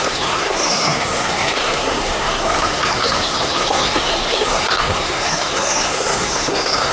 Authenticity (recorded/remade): remade